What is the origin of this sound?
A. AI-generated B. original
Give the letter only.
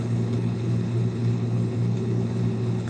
A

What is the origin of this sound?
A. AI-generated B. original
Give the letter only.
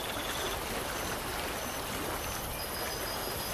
B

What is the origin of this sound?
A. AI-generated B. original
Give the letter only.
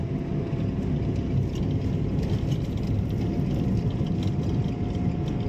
B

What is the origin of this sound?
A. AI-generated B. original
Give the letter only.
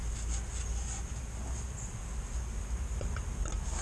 B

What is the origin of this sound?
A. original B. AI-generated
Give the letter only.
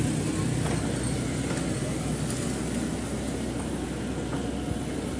A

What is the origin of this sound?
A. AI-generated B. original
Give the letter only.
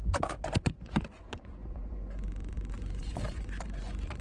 A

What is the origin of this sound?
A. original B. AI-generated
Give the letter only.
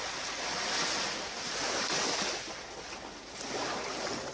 A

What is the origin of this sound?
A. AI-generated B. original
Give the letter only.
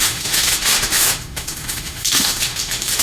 A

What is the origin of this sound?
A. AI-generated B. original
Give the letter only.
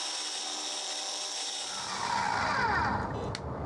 B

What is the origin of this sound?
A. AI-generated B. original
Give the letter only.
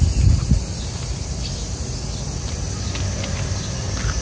B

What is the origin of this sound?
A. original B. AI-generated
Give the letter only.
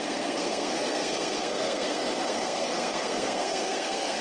B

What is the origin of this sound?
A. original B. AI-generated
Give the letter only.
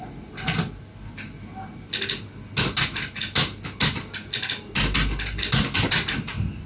A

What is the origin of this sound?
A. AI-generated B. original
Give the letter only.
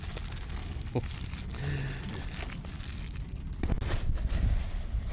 B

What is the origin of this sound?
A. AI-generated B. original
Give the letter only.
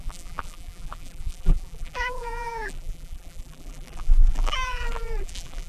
A